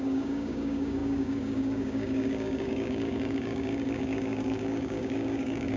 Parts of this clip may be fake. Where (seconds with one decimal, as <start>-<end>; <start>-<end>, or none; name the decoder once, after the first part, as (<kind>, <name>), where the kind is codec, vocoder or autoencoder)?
0.0-5.8 (codec, DAC)